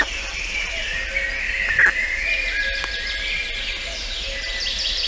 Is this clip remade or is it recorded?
recorded